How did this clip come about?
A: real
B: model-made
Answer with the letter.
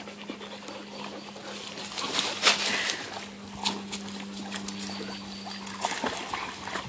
A